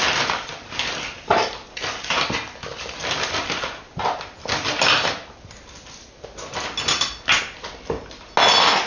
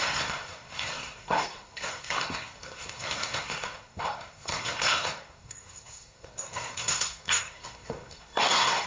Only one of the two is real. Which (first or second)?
first